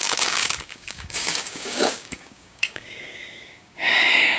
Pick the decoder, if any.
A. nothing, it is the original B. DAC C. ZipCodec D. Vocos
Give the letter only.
B